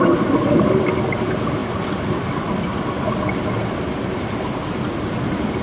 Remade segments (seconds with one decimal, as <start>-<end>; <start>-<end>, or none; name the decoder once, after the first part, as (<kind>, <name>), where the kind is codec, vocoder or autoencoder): none